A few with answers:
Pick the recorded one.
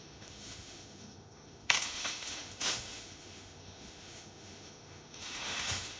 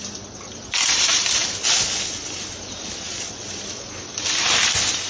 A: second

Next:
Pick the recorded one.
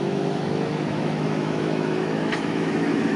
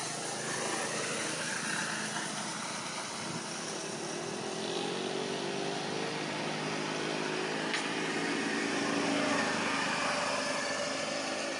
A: second